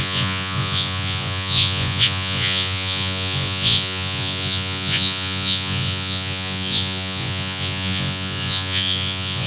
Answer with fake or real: fake